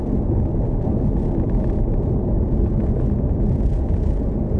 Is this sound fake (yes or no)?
no